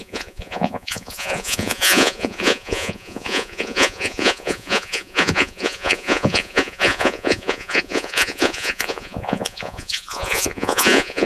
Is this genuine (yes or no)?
no